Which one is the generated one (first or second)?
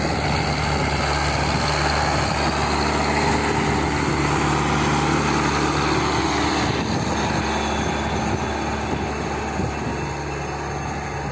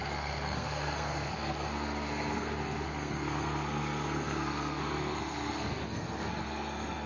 second